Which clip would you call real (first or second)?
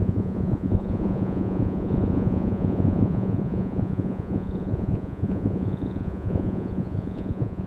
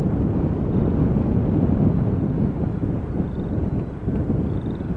second